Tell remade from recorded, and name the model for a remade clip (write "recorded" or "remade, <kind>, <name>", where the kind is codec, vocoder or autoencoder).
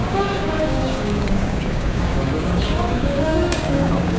remade, codec, DAC